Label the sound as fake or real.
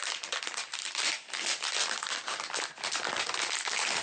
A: real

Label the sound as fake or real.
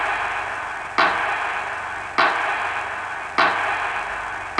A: real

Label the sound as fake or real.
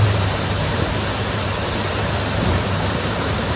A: fake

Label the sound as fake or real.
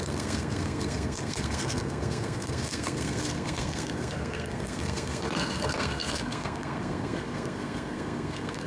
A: fake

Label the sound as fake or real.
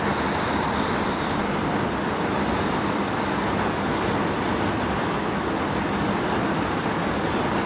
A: real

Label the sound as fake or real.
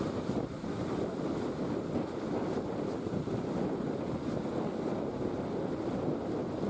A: real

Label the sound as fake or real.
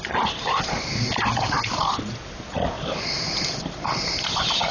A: real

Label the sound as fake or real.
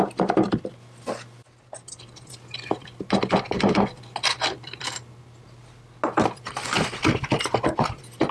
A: real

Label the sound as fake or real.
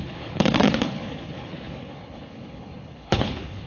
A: fake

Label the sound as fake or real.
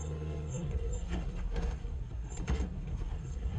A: fake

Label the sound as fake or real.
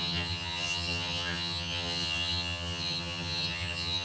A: fake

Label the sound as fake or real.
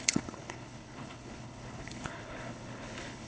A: fake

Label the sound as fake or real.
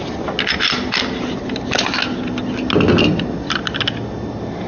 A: real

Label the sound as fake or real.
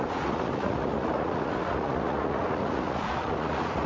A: fake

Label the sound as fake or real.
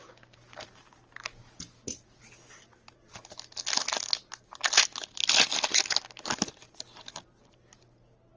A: real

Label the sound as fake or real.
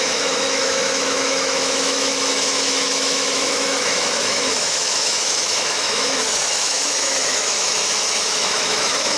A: fake